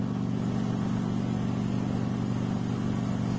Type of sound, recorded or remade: recorded